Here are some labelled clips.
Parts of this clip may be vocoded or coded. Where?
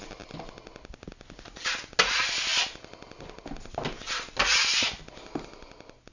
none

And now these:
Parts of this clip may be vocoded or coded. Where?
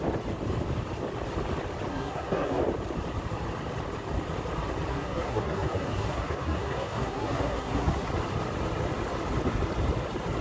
1.9-2.6 (codec, SNAC); 4.9-8.1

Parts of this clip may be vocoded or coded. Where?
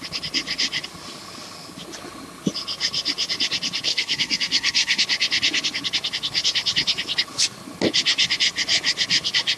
3.9-5.0 (codec, SNAC)